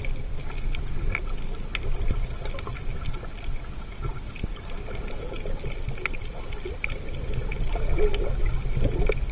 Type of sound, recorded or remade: recorded